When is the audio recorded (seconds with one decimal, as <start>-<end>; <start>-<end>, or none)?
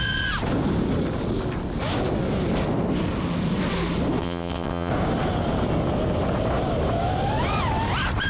0.0-4.2; 4.9-8.3